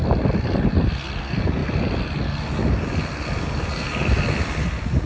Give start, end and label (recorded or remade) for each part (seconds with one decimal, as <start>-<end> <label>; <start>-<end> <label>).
0.0-5.1 recorded